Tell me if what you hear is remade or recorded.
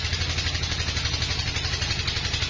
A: recorded